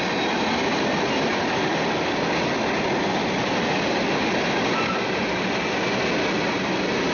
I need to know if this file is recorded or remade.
recorded